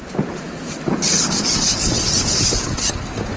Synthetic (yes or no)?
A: no